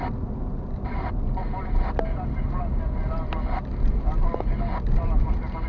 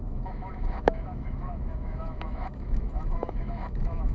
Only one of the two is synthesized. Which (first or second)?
second